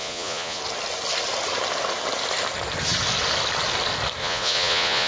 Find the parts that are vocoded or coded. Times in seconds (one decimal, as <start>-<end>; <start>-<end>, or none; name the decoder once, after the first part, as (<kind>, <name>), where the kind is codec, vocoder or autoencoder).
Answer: 0.0-0.6 (vocoder, Vocos); 4.2-5.1